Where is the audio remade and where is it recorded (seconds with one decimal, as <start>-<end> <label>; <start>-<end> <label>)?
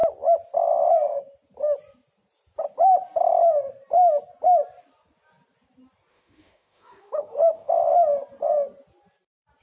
0.0-6.1 recorded; 6.1-7.7 remade; 7.7-9.6 recorded